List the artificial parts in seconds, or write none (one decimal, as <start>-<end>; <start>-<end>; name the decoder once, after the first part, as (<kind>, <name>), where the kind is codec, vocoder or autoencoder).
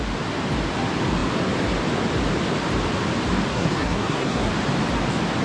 3.5-4.5 (codec, SNAC)